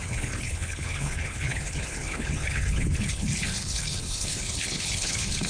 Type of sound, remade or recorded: remade